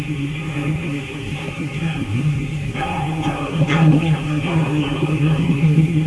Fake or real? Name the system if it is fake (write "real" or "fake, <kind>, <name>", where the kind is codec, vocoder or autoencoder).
fake, codec, SNAC